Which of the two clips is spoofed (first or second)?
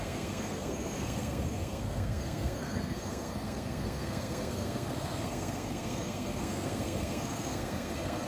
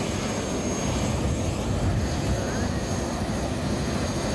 first